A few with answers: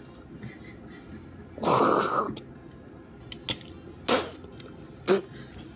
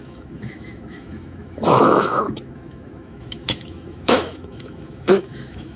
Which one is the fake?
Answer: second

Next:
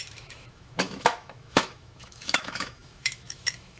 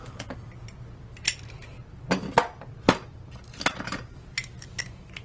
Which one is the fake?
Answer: first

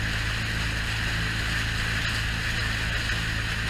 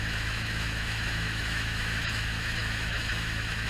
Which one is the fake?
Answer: second